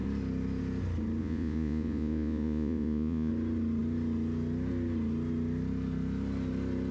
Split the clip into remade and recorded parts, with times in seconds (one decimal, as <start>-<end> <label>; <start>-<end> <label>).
0.0-1.2 recorded; 1.2-3.3 remade; 3.3-6.9 recorded